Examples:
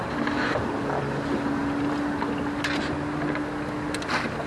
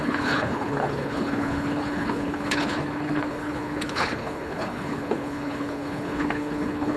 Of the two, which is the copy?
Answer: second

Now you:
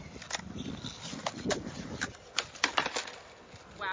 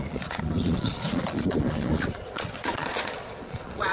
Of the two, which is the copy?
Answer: second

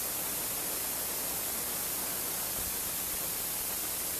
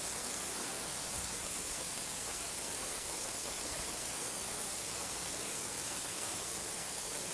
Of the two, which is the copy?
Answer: second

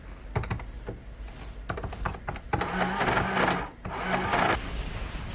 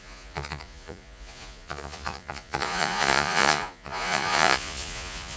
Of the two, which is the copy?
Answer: second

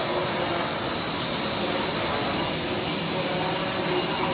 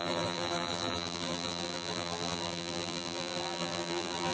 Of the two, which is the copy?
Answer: second